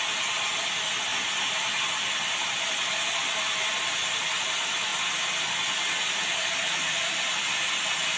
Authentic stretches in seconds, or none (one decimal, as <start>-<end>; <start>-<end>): 0.0-8.2